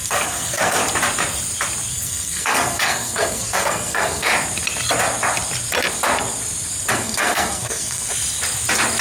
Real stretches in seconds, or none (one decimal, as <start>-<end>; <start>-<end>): 0.8-1.9; 4.3-6.9; 8.1-9.0